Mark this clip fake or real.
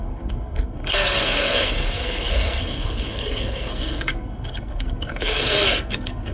fake